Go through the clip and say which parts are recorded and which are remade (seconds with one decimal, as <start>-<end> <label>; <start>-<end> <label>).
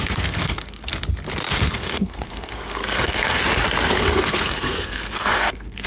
0.0-0.9 remade; 0.9-1.5 recorded; 1.5-3.4 remade; 3.4-3.9 recorded; 3.9-5.9 remade